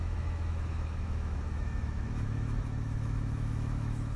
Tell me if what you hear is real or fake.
fake